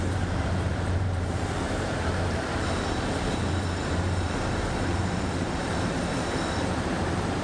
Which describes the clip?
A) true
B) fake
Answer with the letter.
B